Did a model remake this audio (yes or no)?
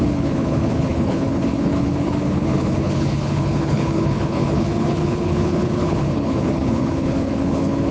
yes